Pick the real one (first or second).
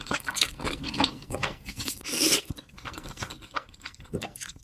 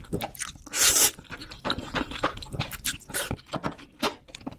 second